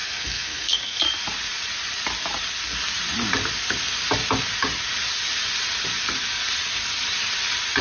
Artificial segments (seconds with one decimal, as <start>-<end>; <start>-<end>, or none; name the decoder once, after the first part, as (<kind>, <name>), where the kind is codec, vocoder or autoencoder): 0.0-1.0 (codec, SNAC)